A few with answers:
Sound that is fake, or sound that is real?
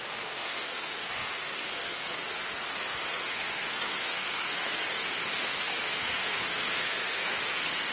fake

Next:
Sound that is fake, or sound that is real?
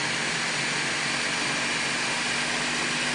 real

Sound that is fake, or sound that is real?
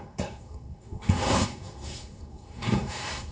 fake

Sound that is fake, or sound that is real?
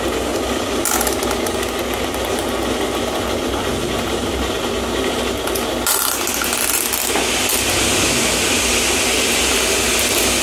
real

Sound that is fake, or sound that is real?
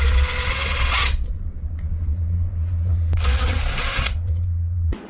fake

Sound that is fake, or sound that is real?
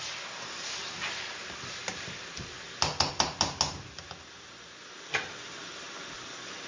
real